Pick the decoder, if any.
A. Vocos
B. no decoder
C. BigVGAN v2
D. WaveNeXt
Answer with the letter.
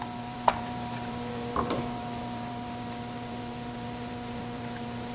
C